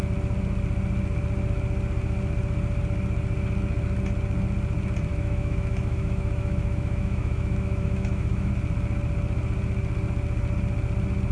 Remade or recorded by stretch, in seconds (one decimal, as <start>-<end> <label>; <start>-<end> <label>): 0.0-5.1 recorded; 5.1-8.5 remade; 8.5-11.3 recorded